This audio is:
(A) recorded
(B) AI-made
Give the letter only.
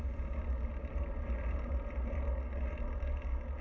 A